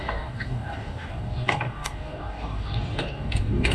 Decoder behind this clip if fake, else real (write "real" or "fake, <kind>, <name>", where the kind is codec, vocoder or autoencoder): fake, codec, DAC